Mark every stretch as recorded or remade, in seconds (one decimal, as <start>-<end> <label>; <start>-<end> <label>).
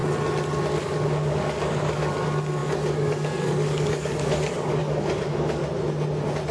0.0-0.8 recorded; 0.8-5.6 remade; 5.6-6.5 recorded